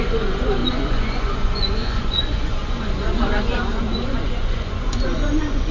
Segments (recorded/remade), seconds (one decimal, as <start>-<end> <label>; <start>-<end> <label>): 0.0-5.7 remade